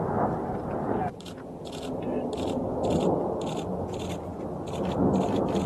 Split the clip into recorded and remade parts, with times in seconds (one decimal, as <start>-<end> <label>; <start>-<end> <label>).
0.0-1.1 recorded; 1.1-1.6 remade; 1.6-5.7 recorded